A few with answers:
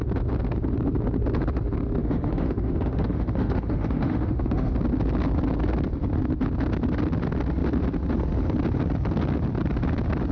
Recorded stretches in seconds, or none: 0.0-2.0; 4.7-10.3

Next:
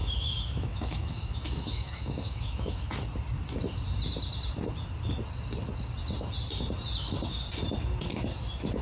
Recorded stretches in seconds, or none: 2.9-8.8

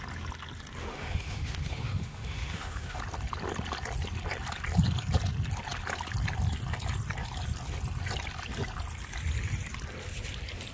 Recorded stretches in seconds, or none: 0.0-0.8; 3.0-10.7

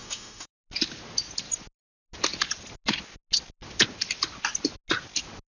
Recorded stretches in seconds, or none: 0.5-5.5